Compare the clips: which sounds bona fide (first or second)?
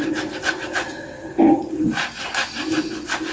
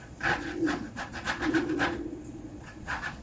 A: first